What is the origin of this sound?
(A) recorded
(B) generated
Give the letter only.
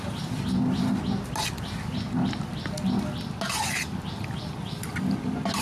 A